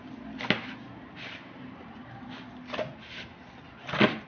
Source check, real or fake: real